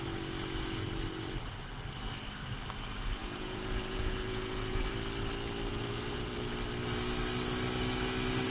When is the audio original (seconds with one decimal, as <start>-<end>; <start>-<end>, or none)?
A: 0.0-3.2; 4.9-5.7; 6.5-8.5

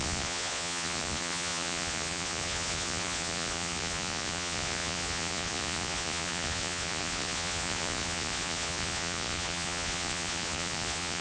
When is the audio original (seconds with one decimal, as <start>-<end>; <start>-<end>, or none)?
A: none

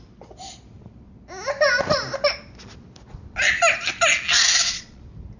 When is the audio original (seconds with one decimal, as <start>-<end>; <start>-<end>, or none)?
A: 0.0-4.3; 5.0-5.4

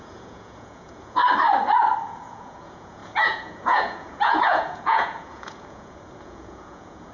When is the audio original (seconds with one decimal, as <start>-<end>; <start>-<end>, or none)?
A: 1.2-2.0

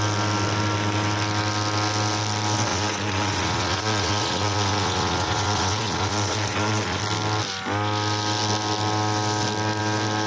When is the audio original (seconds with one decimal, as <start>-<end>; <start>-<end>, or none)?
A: 0.0-2.7; 7.0-10.3

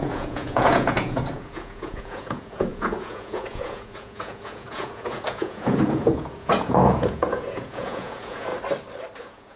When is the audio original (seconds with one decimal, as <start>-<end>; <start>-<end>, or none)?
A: 8.5-9.2